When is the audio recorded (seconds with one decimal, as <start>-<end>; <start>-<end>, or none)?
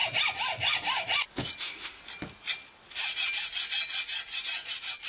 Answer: 0.0-1.6; 2.0-5.1